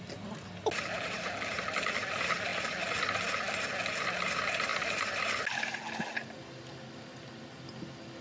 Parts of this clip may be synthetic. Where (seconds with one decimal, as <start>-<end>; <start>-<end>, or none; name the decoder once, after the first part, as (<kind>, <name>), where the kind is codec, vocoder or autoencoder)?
none